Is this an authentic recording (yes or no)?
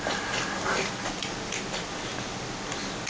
yes